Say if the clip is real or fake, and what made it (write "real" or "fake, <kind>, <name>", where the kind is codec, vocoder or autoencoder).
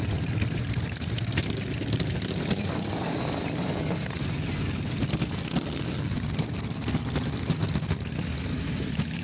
real